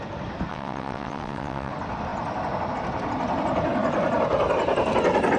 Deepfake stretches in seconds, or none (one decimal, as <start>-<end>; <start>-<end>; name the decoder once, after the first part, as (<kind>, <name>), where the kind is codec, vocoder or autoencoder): 0.5-1.7 (vocoder, WaveNeXt)